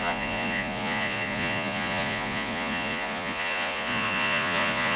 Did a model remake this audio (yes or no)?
yes